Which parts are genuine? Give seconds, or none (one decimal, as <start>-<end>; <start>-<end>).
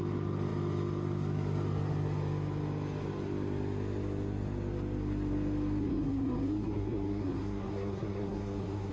0.0-5.8